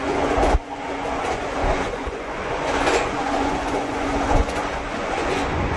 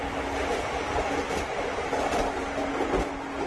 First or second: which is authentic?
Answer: second